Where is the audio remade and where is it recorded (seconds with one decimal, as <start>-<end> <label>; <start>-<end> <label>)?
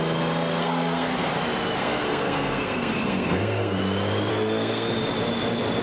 0.0-0.6 recorded; 0.6-1.3 remade; 1.3-1.8 recorded; 1.8-3.8 remade; 3.8-4.3 recorded; 4.3-4.9 remade; 4.9-5.8 recorded